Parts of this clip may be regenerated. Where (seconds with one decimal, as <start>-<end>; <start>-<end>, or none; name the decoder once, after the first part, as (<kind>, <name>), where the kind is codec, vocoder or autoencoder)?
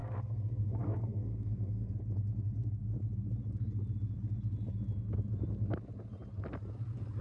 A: 0.0-1.9 (codec, SNAC)